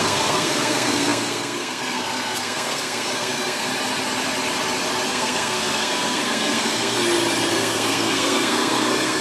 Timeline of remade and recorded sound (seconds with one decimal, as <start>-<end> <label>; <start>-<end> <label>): 0.0-3.7 remade; 3.7-5.1 recorded; 5.1-7.0 remade; 7.0-7.5 recorded; 7.5-9.2 remade